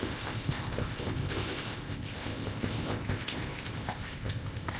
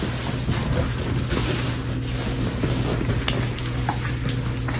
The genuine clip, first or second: second